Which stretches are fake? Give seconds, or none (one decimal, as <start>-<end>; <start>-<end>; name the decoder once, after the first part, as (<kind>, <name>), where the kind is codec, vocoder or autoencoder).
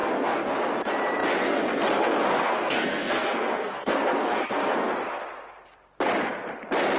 0.0-0.5 (codec, SNAC); 1.4-4.9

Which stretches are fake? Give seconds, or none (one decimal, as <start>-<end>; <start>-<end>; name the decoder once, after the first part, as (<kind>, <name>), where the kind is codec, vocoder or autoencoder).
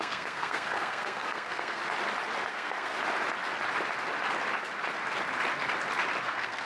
0.0-1.8 (codec, SNAC); 2.5-3.0; 6.2-6.7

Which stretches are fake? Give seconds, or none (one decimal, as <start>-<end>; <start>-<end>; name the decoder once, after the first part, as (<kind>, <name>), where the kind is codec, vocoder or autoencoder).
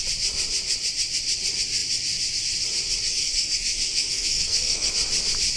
3.2-4.9 (codec, SNAC)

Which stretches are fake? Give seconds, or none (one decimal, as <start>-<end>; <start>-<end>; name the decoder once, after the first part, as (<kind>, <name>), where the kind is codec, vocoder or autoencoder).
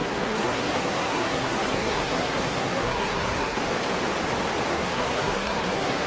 0.0-3.6 (codec, SNAC); 4.7-6.1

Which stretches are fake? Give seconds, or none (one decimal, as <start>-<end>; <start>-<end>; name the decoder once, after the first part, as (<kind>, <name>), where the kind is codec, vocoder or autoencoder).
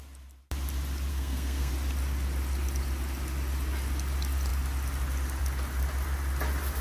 1.1-1.7 (codec, SNAC)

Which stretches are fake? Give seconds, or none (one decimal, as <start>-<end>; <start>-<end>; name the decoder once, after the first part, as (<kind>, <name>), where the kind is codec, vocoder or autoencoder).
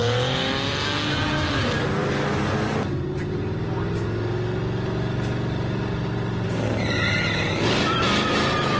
none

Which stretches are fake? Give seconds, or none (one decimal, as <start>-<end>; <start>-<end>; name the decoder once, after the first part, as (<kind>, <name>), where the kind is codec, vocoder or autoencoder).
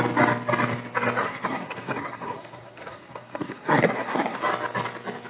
1.2-4.4 (codec, SNAC)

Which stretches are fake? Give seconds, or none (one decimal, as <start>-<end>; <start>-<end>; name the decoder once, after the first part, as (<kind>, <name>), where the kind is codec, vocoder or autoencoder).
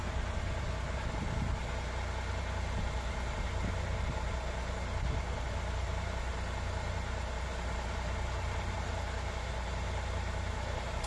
none